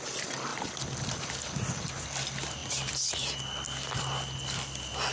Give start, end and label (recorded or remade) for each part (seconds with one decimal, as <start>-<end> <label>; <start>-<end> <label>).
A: 0.0-5.1 recorded